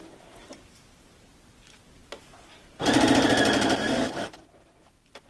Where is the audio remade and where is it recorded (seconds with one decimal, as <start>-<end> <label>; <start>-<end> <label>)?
0.0-5.3 recorded